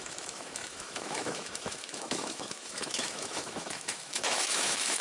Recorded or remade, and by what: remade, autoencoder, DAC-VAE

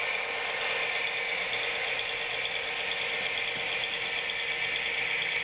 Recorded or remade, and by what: recorded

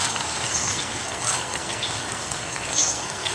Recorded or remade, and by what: remade, codec, SNAC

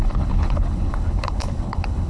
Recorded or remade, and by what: remade, codec, HILCodec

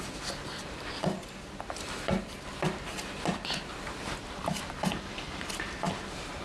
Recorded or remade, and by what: recorded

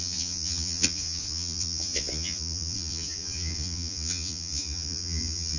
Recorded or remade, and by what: remade, vocoder, Vocos